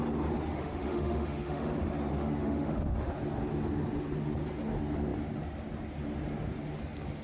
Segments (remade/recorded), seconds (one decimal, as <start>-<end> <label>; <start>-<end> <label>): 0.0-0.5 recorded; 0.5-1.7 remade; 1.7-2.1 recorded; 2.1-3.1 remade; 3.1-7.2 recorded